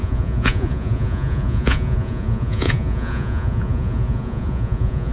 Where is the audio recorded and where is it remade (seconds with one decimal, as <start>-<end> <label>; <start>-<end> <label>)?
0.0-5.1 remade

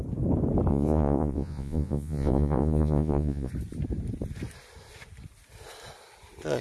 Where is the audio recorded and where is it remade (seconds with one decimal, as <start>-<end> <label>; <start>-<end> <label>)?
0.0-0.7 recorded; 0.7-3.5 remade; 3.5-6.6 recorded

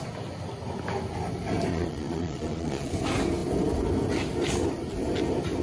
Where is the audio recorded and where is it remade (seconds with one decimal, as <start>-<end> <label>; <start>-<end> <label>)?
0.0-1.7 recorded; 1.7-2.9 remade; 2.9-5.6 recorded

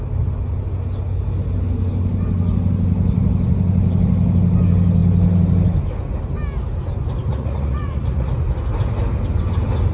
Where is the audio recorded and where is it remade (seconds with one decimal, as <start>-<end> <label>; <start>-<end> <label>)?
0.0-7.3 recorded; 7.3-8.3 remade; 8.3-9.9 recorded

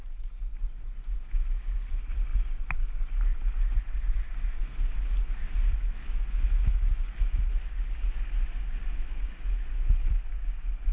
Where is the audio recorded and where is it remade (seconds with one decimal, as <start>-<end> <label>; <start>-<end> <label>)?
0.0-10.9 recorded